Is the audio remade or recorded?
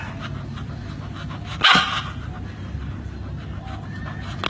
recorded